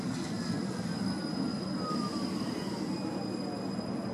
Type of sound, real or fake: real